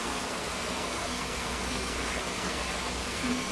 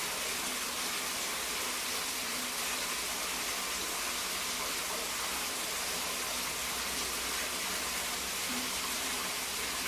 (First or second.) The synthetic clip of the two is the first